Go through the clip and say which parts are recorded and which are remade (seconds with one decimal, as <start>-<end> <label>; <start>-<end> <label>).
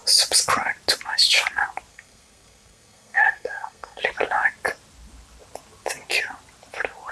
0.0-1.9 recorded; 1.9-4.0 remade; 4.0-7.1 recorded